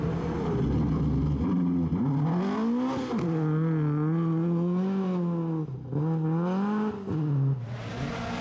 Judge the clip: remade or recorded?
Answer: recorded